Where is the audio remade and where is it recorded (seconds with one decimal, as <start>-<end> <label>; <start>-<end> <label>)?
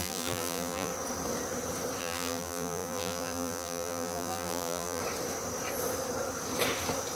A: 0.0-0.9 remade; 0.9-2.0 recorded; 2.0-5.0 remade; 5.0-7.2 recorded